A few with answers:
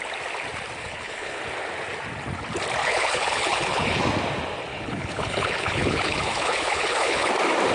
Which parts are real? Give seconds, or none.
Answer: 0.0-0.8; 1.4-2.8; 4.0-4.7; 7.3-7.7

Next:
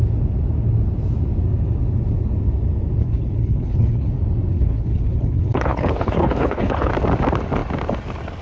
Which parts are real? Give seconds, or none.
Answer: 0.0-3.0; 4.1-4.5; 6.9-8.4

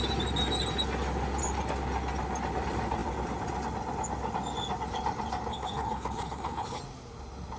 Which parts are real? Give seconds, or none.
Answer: 0.0-5.5; 6.8-7.6

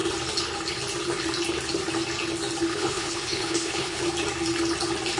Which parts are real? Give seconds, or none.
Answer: 0.0-2.7; 4.0-5.2

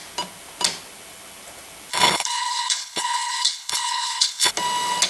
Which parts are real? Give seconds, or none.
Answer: 0.0-1.9; 4.5-5.1